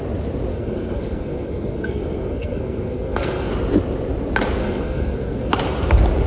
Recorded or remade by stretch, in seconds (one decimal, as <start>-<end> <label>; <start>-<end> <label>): 0.0-0.5 recorded; 0.5-3.5 remade; 3.5-4.6 recorded; 4.6-5.5 remade; 5.5-6.3 recorded